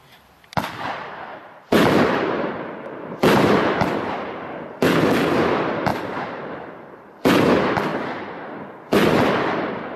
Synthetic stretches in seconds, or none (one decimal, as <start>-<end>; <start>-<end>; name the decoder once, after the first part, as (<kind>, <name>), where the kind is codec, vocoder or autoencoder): 1.3-4.6 (vocoder, BigVGAN v2); 5.9-7.4